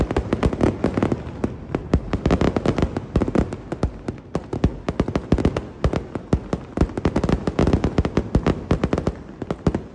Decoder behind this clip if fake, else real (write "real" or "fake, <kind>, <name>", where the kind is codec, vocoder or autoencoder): real